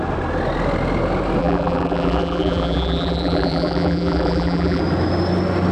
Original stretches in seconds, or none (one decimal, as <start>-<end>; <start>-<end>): 0.0-1.4; 4.8-5.7